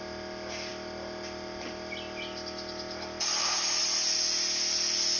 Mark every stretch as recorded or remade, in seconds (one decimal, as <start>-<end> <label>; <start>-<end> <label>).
0.0-5.2 recorded